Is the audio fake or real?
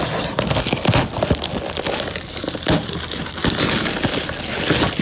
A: real